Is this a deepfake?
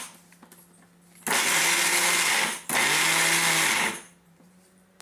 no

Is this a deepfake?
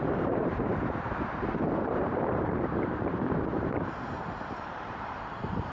yes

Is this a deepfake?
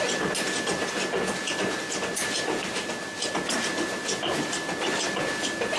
no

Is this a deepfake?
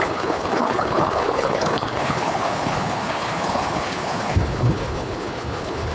yes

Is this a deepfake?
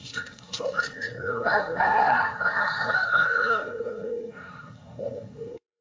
yes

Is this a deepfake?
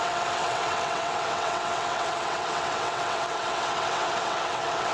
yes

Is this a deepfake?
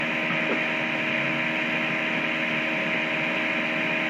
no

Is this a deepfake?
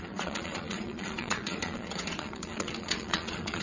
yes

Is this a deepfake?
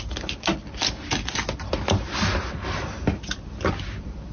no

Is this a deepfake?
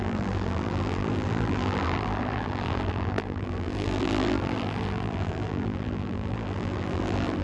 yes